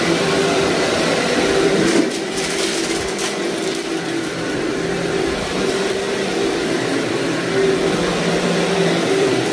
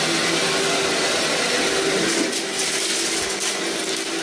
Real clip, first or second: second